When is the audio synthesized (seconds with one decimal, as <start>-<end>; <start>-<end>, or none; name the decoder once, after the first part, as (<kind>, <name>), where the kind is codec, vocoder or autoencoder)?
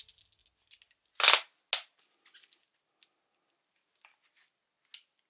none